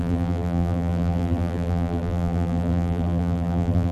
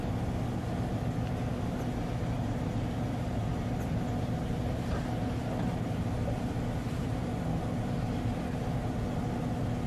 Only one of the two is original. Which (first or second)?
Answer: second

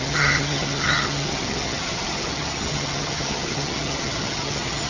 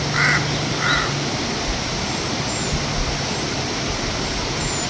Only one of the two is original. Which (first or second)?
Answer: second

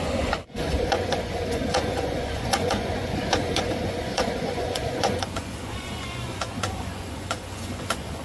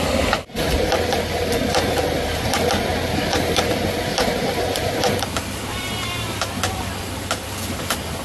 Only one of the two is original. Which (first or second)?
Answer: second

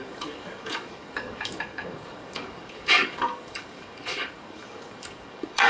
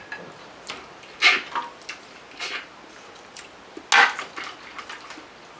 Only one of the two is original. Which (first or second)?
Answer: second